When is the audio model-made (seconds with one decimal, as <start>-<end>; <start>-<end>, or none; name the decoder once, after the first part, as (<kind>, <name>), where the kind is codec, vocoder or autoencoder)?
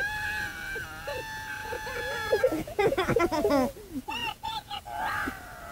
1.6-3.2 (vocoder, Vocos); 4.2-4.8